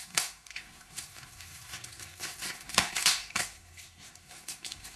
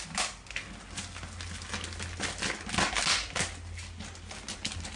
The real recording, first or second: second